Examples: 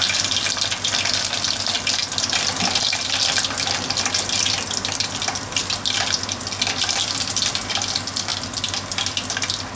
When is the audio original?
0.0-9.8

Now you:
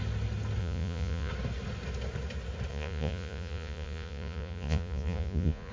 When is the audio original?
0.0-0.6; 1.3-2.7

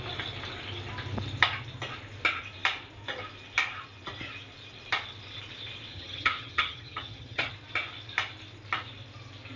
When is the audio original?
0.0-5.9; 7.5-9.6